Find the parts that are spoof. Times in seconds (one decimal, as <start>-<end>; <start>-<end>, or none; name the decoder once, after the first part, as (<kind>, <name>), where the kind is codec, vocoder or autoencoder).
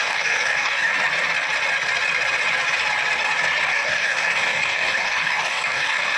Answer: 0.0-0.9 (codec, DAC); 3.7-6.2